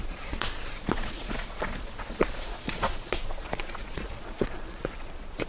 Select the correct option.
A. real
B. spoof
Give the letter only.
B